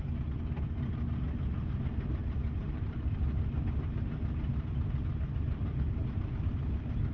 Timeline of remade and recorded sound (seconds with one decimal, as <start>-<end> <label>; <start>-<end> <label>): 0.0-2.2 recorded; 2.2-3.3 remade; 3.3-7.1 recorded

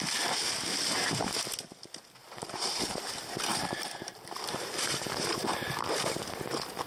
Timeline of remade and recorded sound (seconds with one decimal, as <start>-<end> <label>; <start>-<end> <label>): 0.0-2.2 recorded; 2.2-3.0 remade; 3.0-3.5 recorded; 3.5-5.8 remade; 5.8-6.9 recorded

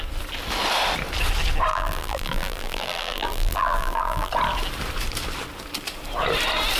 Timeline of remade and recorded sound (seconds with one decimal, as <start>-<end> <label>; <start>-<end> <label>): 0.0-1.7 recorded; 1.7-4.3 remade; 4.3-6.8 recorded

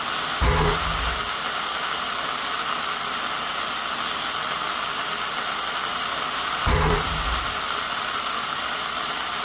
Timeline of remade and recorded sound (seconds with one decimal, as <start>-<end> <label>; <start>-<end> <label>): 0.0-5.9 recorded; 5.9-9.0 remade; 9.0-9.4 recorded

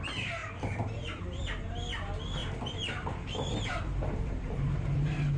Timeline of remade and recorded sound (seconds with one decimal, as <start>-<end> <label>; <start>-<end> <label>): 0.0-0.4 recorded; 0.4-1.4 remade; 1.4-2.4 recorded; 2.4-4.7 remade; 4.7-5.4 recorded

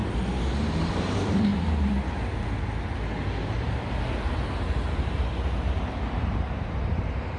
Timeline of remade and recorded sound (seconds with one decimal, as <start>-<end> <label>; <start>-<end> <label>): 0.0-1.5 remade; 1.5-4.3 recorded; 4.3-7.4 remade